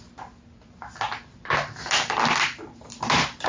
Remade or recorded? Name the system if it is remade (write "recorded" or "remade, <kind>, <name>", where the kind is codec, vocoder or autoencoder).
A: recorded